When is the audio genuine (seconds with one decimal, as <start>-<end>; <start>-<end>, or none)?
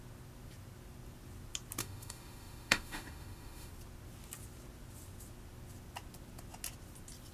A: 0.0-1.8; 3.7-7.3